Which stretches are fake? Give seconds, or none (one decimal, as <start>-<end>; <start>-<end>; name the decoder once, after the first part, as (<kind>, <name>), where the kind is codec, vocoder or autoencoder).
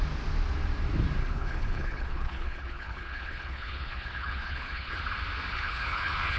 1.2-5.0 (codec, HILCodec); 5.5-6.4